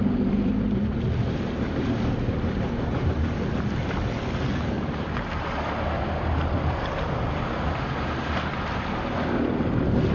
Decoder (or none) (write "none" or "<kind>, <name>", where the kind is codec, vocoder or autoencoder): none